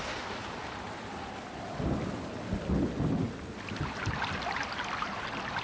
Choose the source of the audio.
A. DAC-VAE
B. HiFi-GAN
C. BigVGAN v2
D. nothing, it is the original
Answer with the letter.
D